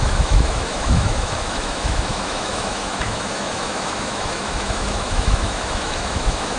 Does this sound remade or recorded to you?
remade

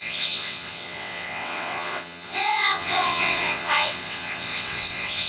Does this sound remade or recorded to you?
remade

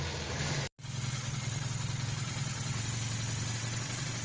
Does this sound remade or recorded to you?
recorded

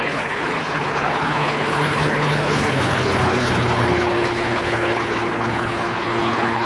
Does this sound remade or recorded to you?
remade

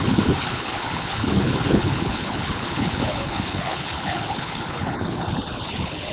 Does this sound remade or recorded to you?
remade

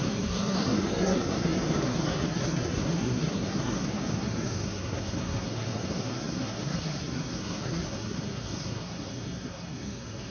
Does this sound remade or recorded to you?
remade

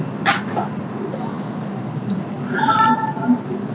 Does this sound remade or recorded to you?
recorded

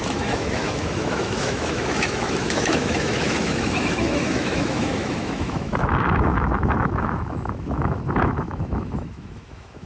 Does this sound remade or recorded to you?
remade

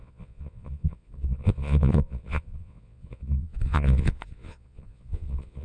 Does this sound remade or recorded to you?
remade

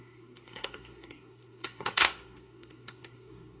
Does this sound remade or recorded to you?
remade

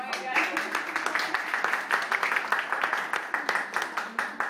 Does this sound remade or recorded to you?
recorded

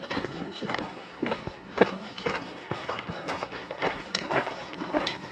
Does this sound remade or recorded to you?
remade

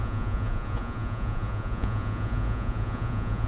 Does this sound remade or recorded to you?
remade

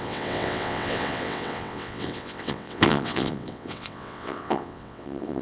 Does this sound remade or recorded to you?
remade